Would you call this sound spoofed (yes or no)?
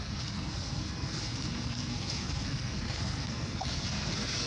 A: yes